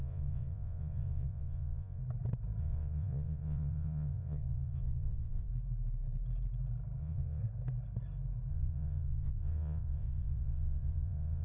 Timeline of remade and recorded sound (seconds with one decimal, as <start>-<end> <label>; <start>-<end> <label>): 0.0-2.0 remade; 2.0-2.6 recorded; 2.6-5.5 remade; 5.5-7.0 recorded; 7.0-7.4 remade; 7.4-8.5 recorded; 8.5-11.4 remade